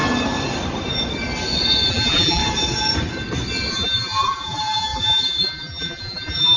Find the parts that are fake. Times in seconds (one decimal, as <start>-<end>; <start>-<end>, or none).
1.9-2.4; 3.7-6.6